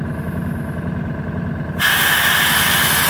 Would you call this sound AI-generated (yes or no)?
no